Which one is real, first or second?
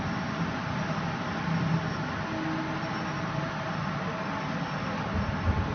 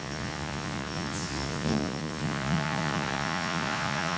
first